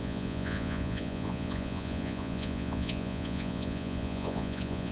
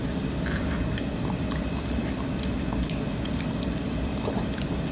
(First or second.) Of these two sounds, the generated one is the first